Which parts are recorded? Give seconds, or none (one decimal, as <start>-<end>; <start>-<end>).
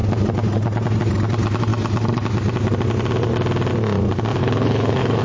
0.0-4.4